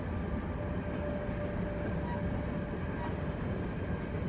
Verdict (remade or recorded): recorded